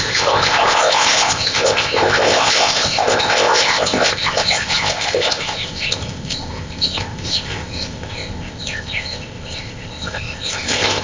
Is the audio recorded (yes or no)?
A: no